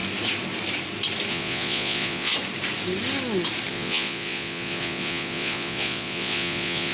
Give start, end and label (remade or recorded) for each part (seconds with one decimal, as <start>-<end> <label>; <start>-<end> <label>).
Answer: 0.0-1.3 recorded; 1.3-2.3 remade; 2.3-3.7 recorded; 3.7-6.9 remade